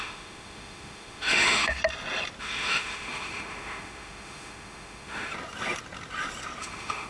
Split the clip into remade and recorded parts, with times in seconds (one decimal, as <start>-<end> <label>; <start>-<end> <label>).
0.0-1.8 remade; 1.8-2.4 recorded; 2.4-5.3 remade; 5.3-6.6 recorded; 6.6-7.1 remade